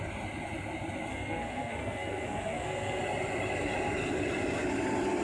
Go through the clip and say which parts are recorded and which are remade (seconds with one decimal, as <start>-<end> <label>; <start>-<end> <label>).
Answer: 0.0-1.1 recorded; 1.1-3.0 remade; 3.0-5.2 recorded